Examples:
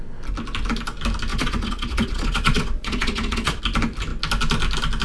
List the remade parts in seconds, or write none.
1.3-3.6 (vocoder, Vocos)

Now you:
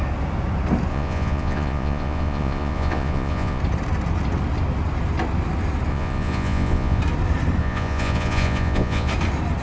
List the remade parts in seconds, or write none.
0.9-3.6 (vocoder, Vocos); 5.9-7.0; 7.6-9.1

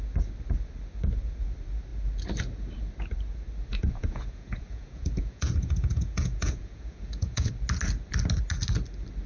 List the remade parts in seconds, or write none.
3.7-7.5 (vocoder, Vocos)

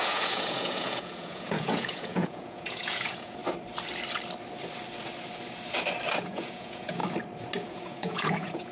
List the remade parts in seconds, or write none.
0.0-3.4 (vocoder, Vocos); 6.2-7.0; 7.7-8.7

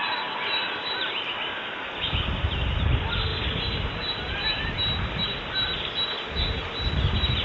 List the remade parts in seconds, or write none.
none

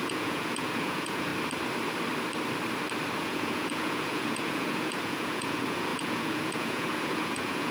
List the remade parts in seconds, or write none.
0.0-1.3 (vocoder, Vocos); 3.2-7.7